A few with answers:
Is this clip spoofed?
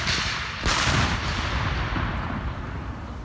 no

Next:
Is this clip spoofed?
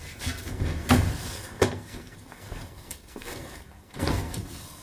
yes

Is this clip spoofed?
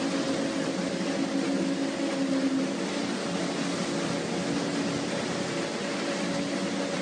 no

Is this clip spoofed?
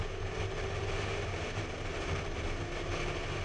no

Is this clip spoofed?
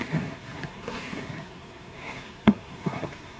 yes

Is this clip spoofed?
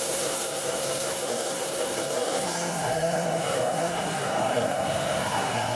yes